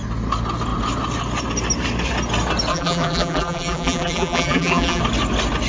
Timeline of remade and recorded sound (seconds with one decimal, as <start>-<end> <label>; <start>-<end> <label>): 0.0-2.7 recorded; 2.7-5.0 remade; 5.0-5.7 recorded